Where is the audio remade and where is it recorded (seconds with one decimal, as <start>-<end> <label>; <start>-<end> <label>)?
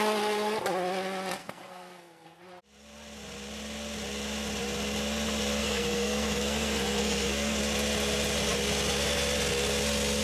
0.0-1.4 recorded; 1.4-2.4 remade; 2.4-5.6 recorded; 5.6-7.6 remade; 7.6-10.2 recorded